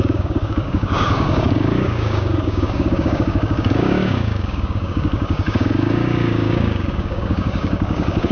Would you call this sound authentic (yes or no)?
no